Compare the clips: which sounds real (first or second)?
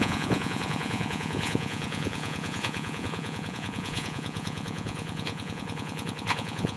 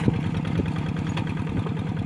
second